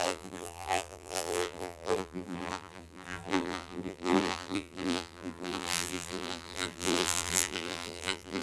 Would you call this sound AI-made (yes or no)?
yes